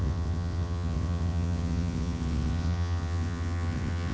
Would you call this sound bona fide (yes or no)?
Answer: no